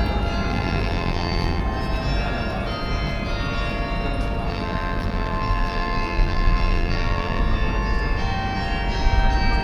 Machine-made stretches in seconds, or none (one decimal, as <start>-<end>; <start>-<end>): 0.5-1.6; 4.5-7.4